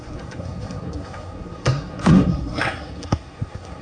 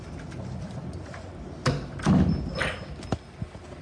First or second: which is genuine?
second